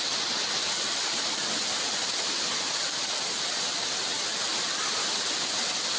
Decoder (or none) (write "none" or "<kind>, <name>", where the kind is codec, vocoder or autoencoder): none